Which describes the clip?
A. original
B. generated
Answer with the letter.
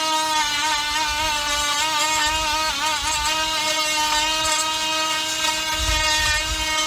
A